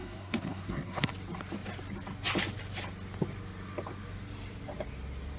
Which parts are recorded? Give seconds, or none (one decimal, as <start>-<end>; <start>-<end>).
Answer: 1.1-5.4